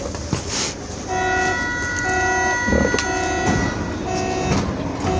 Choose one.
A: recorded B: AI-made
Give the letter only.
A